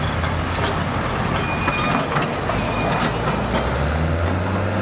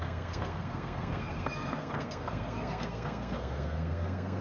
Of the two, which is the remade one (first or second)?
second